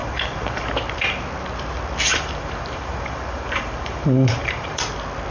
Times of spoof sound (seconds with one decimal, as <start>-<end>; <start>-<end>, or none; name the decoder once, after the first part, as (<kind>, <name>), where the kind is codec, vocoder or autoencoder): 0.0-0.7 (vocoder, BigVGAN v2); 2.1-4.8

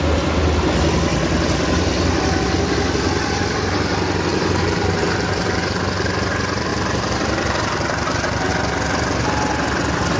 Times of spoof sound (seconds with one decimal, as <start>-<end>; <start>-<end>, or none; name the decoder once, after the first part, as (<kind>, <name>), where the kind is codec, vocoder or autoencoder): 4.3-5.8 (vocoder, BigVGAN v2); 6.7-8.5